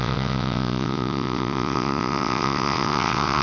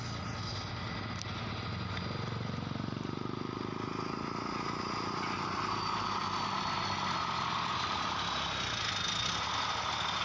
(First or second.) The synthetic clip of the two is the first